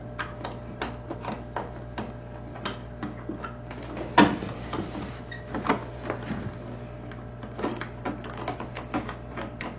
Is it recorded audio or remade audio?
recorded